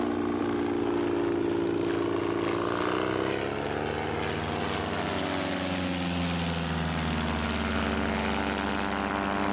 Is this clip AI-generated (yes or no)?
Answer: no